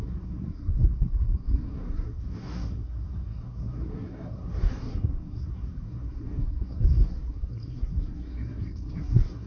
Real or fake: fake